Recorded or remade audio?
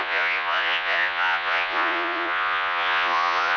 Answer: remade